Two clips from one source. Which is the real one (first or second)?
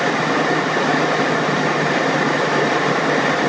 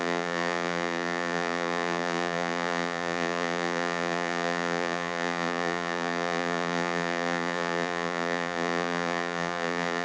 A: first